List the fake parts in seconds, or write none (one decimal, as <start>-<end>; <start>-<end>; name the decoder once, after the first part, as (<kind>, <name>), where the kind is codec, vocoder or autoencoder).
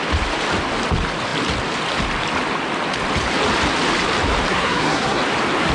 4.5-5.2 (codec, SNAC)